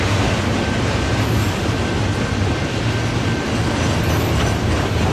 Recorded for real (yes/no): yes